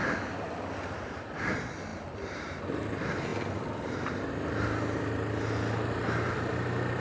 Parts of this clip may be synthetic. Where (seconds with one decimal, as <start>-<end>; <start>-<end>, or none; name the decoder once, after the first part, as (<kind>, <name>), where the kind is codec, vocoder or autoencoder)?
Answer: 0.0-1.3 (vocoder, BigVGAN v2); 1.9-2.6; 3.3-4.3